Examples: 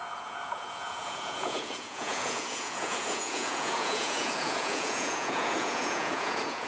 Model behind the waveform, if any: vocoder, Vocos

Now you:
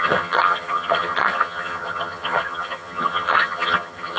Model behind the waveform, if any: vocoder, HiFi-GAN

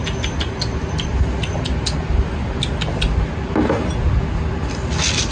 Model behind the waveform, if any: none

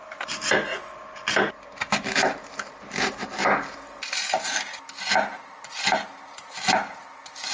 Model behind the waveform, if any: none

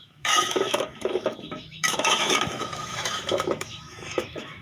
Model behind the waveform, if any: autoencoder, DAC-VAE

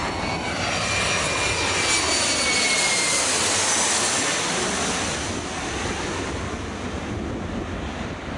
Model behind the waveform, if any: none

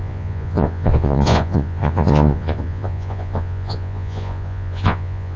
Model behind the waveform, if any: vocoder, Vocos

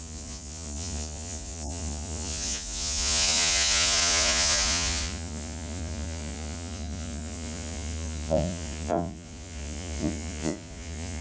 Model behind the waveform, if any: vocoder, Vocos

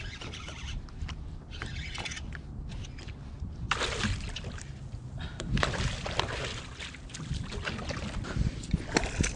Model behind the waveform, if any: none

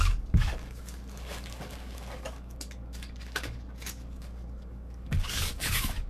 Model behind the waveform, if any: codec, DAC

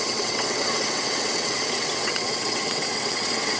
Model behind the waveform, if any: vocoder, WaveNeXt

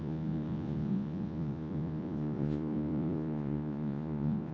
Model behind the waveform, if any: vocoder, Vocos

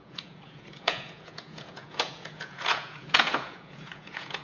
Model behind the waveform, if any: vocoder, Vocos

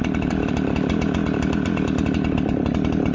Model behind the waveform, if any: vocoder, BigVGAN v2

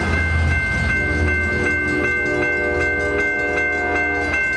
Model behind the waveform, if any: none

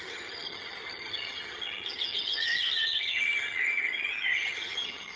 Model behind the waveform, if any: vocoder, HiFi-GAN